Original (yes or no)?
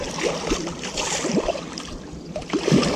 yes